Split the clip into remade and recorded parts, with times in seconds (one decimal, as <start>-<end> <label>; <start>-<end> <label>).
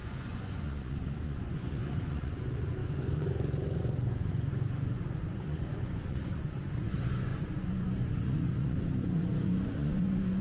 0.0-10.4 remade